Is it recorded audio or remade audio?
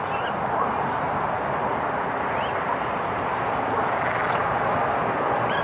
recorded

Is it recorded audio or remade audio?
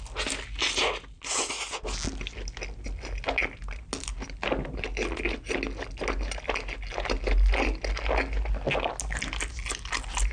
recorded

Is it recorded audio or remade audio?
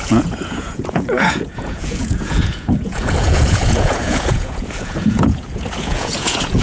remade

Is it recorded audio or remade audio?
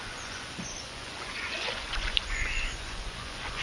remade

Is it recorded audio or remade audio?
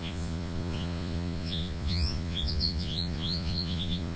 remade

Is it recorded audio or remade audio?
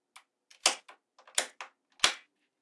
recorded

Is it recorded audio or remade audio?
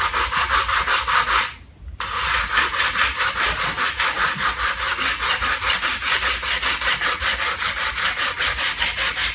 recorded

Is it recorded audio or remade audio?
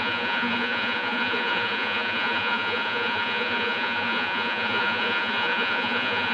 remade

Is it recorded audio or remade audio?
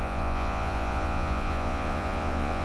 remade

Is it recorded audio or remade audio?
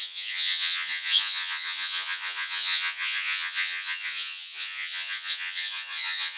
remade